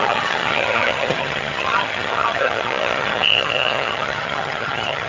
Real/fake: fake